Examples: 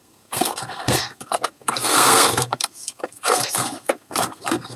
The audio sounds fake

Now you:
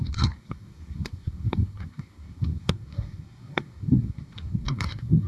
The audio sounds fake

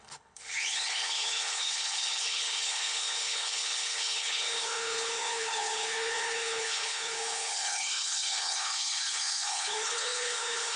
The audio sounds fake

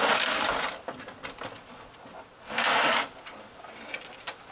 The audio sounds real